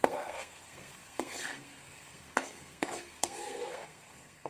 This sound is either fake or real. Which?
fake